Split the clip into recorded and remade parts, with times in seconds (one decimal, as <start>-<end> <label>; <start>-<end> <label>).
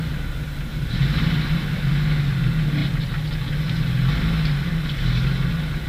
0.0-0.7 recorded; 0.7-1.6 remade; 1.6-5.9 recorded